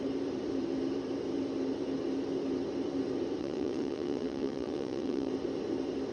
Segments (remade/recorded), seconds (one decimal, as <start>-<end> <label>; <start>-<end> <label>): 0.0-3.4 recorded; 3.4-5.3 remade; 5.3-6.1 recorded